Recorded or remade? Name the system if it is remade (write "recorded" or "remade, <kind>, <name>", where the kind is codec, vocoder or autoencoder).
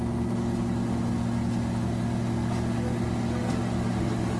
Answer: recorded